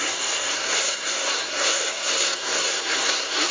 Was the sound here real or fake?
fake